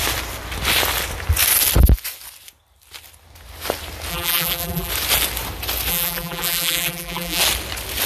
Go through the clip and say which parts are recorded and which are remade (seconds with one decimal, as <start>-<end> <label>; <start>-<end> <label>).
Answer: 0.0-4.1 recorded; 4.1-4.9 remade; 4.9-5.9 recorded; 5.9-7.4 remade; 7.4-8.1 recorded